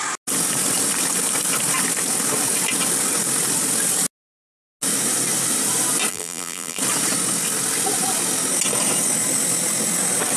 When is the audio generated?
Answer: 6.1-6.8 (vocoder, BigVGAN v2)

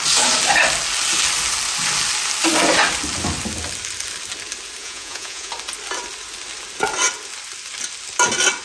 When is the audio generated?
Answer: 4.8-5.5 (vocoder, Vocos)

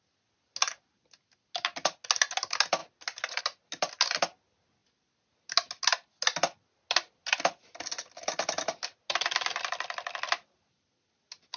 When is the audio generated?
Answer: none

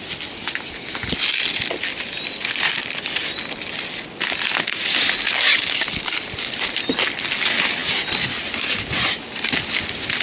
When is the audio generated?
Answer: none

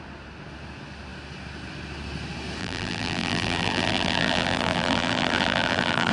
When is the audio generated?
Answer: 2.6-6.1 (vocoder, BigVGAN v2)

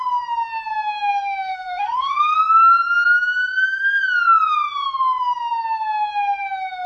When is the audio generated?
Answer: 1.1-2.4 (codec, SNAC)

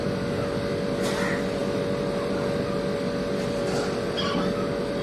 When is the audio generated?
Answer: none

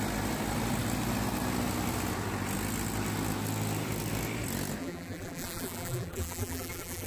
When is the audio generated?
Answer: 4.8-7.1 (vocoder, BigVGAN v2)